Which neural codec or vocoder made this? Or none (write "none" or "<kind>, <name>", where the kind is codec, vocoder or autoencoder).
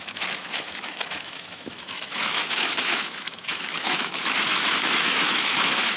autoencoder, DAC-VAE